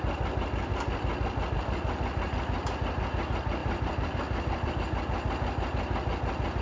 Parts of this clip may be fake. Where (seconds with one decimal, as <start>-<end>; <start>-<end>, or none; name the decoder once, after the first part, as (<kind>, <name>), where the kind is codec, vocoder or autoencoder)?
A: 0.7-1.5 (vocoder, BigVGAN v2); 3.6-4.7